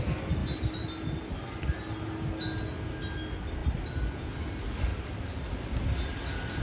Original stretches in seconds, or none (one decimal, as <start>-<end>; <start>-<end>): 0.0-3.6; 4.1-4.9; 5.5-6.6